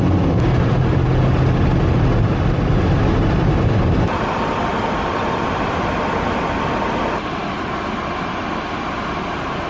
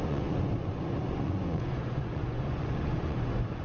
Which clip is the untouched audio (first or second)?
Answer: first